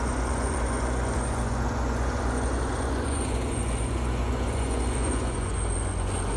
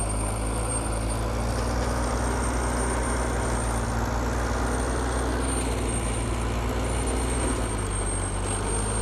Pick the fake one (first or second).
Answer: first